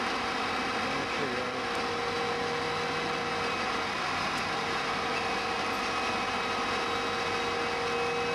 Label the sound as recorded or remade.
recorded